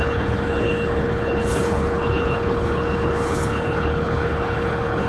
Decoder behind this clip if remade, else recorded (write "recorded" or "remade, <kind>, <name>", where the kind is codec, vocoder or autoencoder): remade, codec, HILCodec